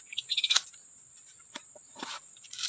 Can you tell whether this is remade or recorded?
remade